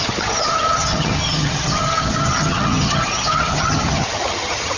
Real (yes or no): no